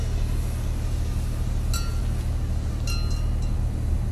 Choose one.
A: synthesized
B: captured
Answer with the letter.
B